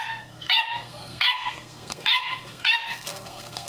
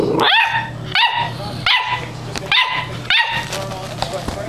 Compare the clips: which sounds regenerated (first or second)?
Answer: first